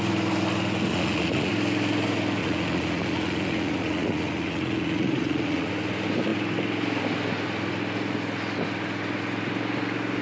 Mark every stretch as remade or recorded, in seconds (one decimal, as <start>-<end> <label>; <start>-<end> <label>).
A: 0.0-0.9 recorded; 0.9-1.5 remade; 1.5-2.4 recorded; 2.4-5.7 remade; 5.7-10.2 recorded